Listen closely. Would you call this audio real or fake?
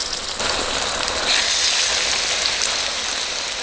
real